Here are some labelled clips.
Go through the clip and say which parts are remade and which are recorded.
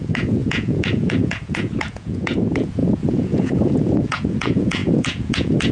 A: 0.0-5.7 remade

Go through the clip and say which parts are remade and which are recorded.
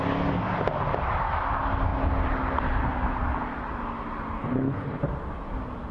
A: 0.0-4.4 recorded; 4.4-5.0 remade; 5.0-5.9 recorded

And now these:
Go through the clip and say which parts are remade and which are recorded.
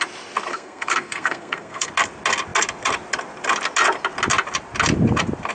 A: 0.0-0.5 recorded; 0.5-1.9 remade; 1.9-5.5 recorded